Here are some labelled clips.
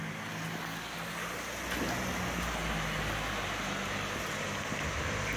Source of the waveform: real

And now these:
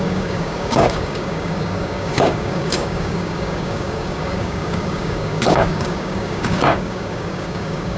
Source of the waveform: fake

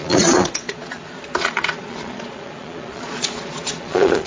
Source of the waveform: fake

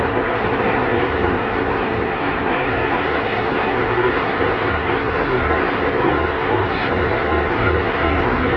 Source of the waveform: fake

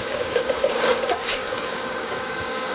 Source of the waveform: fake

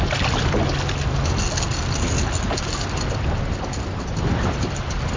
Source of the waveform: real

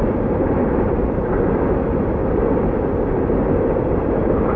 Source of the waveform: real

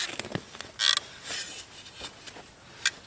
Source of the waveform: real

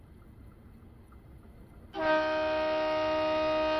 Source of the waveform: real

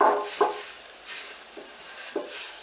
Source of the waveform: fake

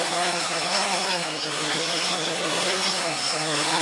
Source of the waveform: fake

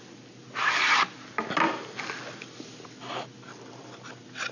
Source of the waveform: real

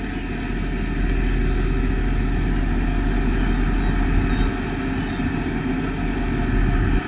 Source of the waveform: real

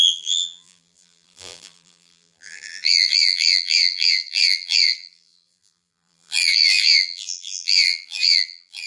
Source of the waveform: fake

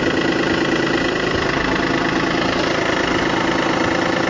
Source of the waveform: real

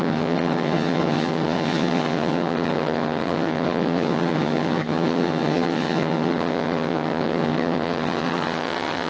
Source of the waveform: fake